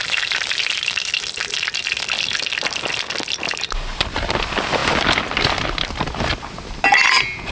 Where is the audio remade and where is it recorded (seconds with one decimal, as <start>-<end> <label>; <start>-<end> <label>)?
0.0-7.5 recorded